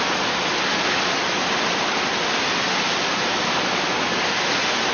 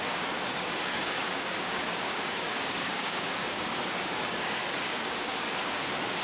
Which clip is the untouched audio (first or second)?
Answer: first